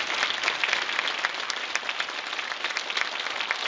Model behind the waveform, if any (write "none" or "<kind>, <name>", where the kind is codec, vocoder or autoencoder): none